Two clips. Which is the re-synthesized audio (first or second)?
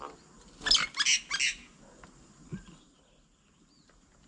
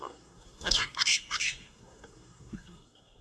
second